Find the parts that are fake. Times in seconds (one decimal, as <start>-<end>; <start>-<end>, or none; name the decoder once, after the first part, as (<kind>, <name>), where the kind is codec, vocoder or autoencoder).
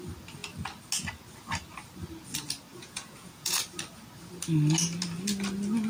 2.7-3.6 (vocoder, Vocos)